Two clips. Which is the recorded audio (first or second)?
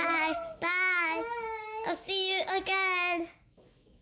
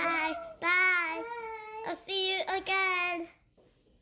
second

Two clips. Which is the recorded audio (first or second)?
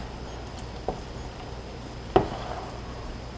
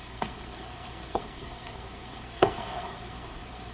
first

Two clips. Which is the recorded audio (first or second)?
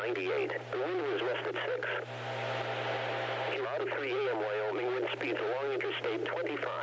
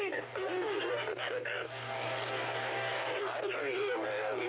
first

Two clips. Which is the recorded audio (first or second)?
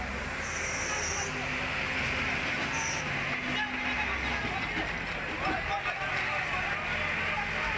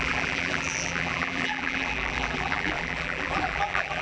first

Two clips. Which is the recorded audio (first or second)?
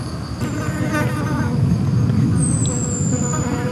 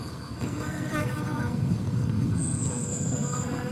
first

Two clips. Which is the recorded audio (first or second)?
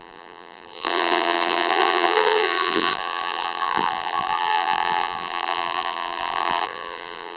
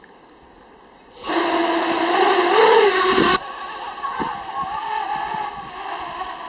second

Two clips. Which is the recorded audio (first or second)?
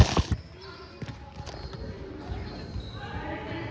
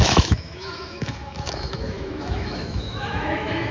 first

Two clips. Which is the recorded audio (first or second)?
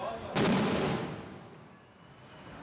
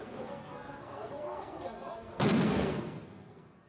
first